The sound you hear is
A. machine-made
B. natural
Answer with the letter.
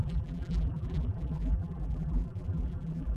A